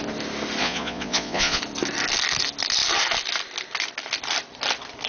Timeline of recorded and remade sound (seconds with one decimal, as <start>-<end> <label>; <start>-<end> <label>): 0.0-0.6 recorded; 0.6-1.6 remade; 1.6-5.1 recorded